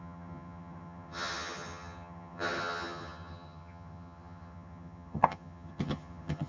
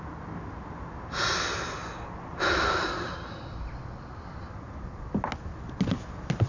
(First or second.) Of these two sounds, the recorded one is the second